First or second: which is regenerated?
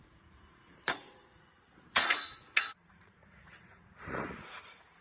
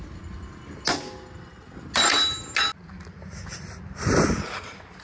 first